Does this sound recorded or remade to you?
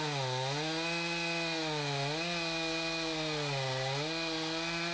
recorded